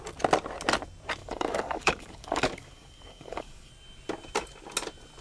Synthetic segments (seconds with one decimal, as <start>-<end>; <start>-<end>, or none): 1.2-3.7